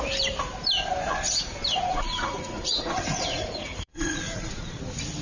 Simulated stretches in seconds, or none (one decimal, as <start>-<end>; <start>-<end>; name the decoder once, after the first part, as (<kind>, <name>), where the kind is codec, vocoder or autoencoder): 1.7-4.7 (vocoder, Vocos)